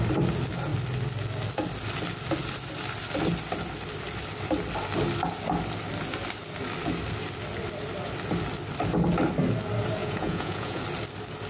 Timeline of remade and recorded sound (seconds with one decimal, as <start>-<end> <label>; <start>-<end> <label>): 0.0-10.0 recorded; 10.0-10.8 remade; 10.8-11.5 recorded

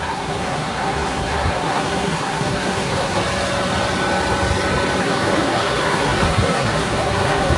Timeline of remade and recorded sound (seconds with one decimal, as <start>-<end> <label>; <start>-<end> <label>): 0.0-3.2 remade; 3.2-5.0 recorded; 5.0-7.6 remade

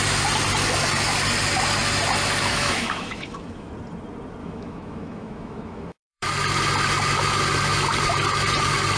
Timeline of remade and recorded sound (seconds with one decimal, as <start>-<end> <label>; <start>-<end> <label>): 0.0-2.5 recorded; 2.5-3.7 remade; 3.7-4.4 recorded; 4.4-6.3 remade; 6.3-9.0 recorded

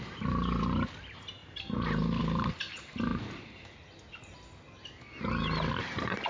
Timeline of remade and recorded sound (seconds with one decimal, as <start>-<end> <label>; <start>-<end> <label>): 0.0-6.3 recorded